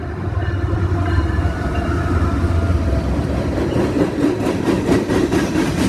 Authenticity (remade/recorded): remade